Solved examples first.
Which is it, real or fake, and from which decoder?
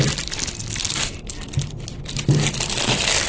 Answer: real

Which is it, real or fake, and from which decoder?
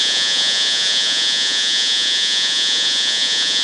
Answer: fake, vocoder, Vocos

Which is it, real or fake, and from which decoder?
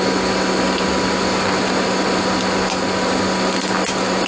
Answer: real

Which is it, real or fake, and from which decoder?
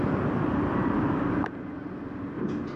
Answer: real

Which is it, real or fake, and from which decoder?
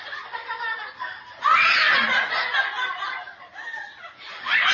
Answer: real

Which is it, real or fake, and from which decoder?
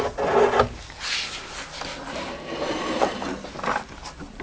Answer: real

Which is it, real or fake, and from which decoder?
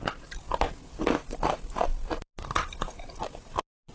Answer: real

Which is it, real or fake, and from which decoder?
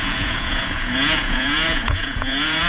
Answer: fake, vocoder, Vocos